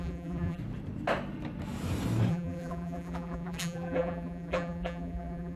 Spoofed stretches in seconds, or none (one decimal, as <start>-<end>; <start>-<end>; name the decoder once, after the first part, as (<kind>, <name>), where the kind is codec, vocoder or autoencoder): 0.0-0.6 (vocoder, BigVGAN v2); 2.3-5.6